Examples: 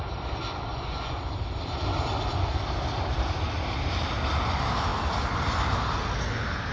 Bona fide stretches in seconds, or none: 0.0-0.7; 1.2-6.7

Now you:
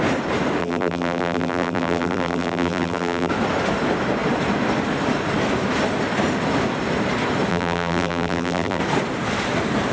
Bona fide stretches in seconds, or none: 0.0-0.6; 3.3-7.5; 8.8-9.9